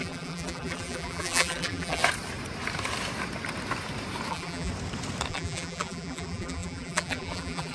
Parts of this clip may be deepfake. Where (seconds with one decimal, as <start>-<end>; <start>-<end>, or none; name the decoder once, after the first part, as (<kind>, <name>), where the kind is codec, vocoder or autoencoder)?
0.0-2.0 (vocoder, BigVGAN v2); 4.3-4.7; 5.3-7.7